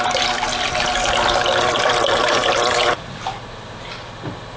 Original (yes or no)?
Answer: yes